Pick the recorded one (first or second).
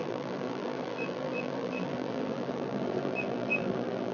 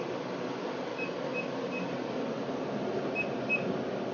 second